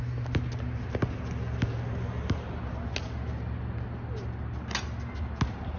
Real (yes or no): yes